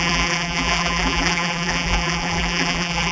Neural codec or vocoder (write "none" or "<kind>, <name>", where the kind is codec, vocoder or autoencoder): vocoder, BigVGAN v2